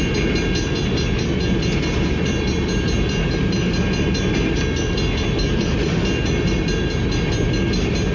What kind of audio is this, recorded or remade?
recorded